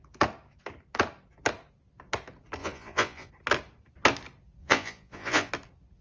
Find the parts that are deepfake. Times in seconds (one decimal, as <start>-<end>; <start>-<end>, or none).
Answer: 2.6-3.3; 4.6-5.5